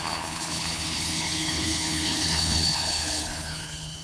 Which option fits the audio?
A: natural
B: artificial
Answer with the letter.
B